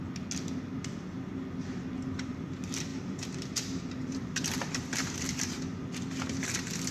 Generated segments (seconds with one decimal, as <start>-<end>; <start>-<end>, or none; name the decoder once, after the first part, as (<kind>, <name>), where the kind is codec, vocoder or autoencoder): 2.9-4.9 (vocoder, BigVGAN v2)